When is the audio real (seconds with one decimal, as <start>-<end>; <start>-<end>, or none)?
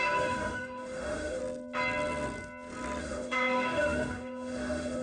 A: 1.4-3.0